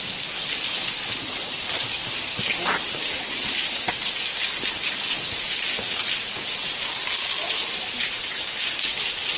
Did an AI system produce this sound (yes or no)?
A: no